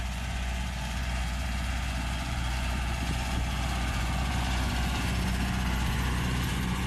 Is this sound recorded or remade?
remade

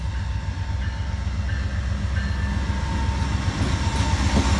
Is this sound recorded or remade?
recorded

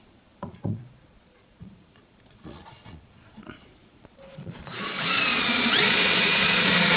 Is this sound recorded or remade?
remade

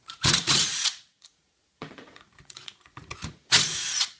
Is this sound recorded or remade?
remade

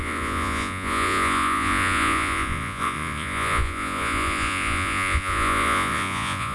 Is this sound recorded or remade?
remade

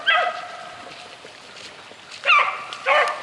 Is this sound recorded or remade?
recorded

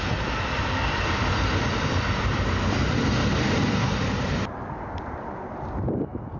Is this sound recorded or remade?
recorded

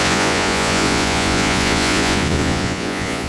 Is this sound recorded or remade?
remade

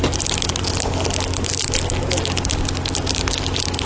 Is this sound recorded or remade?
recorded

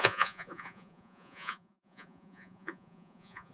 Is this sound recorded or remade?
remade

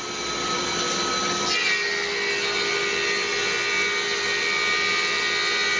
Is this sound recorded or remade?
recorded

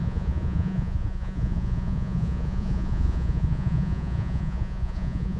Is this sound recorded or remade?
remade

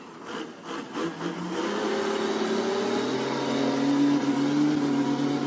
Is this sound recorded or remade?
recorded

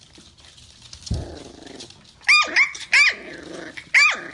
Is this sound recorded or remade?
recorded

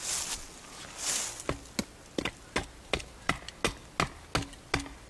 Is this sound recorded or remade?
recorded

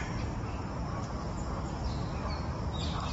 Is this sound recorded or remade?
recorded